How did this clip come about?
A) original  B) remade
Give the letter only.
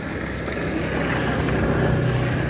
A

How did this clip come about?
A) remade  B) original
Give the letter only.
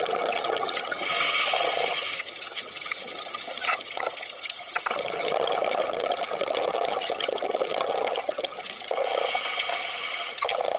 A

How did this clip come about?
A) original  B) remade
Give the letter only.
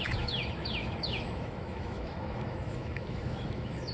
B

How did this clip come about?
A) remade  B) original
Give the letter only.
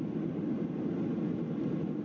B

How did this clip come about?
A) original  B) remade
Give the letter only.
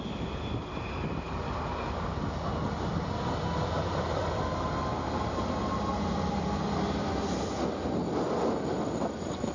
A